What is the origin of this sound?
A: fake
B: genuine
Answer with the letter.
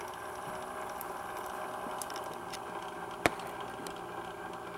B